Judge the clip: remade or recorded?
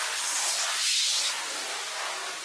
recorded